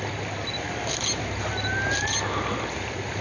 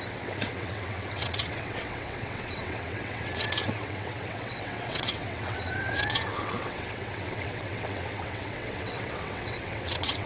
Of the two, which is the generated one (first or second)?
second